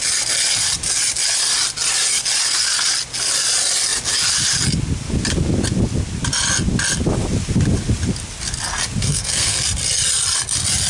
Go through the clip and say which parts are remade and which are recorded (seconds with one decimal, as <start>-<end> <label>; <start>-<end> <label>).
0.0-9.0 recorded; 9.0-9.6 remade; 9.6-10.9 recorded